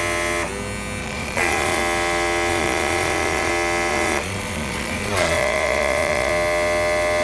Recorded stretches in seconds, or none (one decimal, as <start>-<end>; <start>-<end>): 0.0-1.0; 1.8-2.5; 3.5-3.9; 6.3-7.2